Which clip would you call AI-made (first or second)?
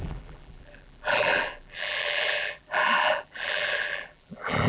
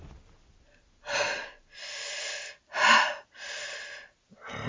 first